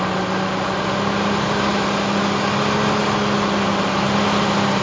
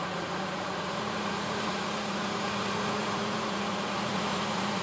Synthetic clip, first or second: second